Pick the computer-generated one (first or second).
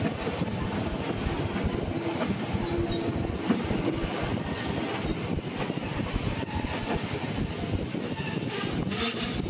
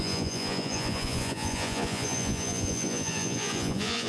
second